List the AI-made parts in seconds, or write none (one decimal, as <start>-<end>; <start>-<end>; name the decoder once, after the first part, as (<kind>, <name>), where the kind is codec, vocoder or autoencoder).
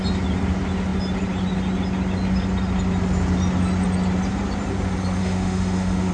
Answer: 5.2-6.1 (autoencoder, DAC-VAE)